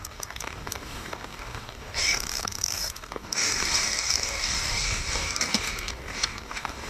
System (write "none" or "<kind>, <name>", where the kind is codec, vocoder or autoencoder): codec, DAC